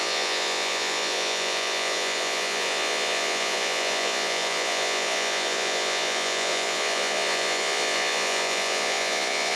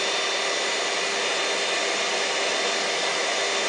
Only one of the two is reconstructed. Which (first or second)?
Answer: first